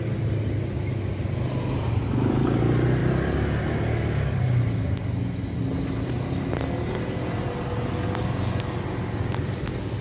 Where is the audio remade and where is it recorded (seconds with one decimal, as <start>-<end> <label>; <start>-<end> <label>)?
0.0-10.0 recorded